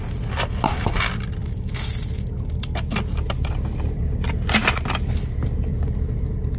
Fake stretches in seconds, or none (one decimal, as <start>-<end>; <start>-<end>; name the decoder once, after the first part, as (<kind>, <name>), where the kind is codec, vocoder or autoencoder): none